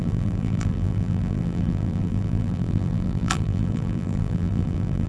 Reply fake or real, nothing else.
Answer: fake